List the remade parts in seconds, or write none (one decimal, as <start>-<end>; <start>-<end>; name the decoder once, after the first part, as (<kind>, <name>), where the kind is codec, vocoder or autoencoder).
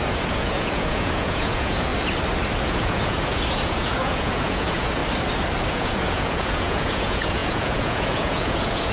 0.0-1.9 (vocoder, Vocos); 2.6-5.0; 5.7-8.9